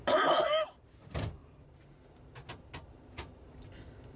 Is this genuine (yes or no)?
yes